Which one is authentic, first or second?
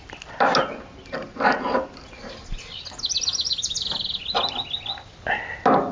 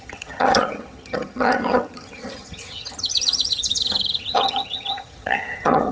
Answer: first